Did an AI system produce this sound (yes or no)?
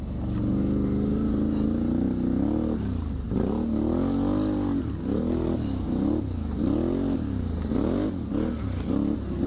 no